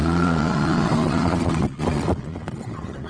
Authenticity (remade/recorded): remade